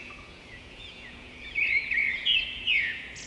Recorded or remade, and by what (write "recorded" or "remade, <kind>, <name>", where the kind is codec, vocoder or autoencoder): remade, vocoder, Vocos